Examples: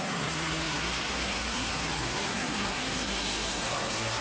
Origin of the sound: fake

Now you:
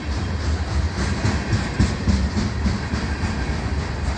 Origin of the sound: real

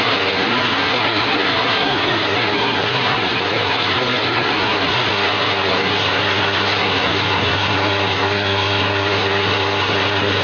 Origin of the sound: fake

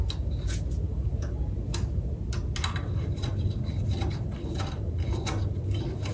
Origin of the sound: real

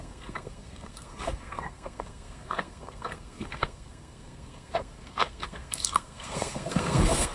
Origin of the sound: fake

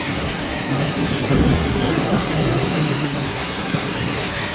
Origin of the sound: fake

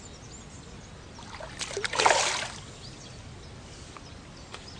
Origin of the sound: real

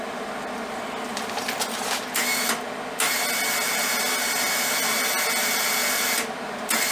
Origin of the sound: real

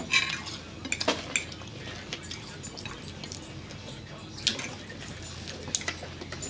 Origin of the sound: real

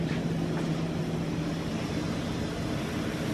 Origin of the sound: real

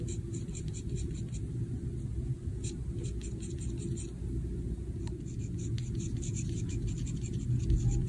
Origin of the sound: real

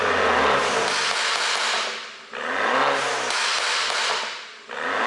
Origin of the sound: real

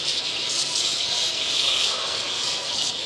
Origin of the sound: fake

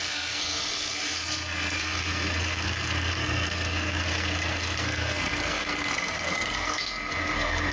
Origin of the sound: fake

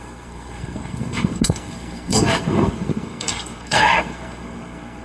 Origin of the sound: fake